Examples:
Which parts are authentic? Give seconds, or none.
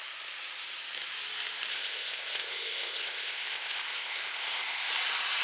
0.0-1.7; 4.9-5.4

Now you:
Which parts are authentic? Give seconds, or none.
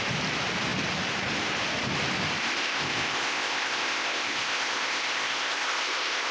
0.0-2.4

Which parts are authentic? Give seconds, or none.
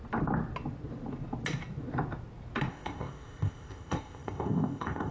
0.0-2.7